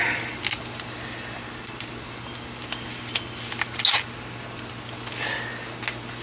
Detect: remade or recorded recorded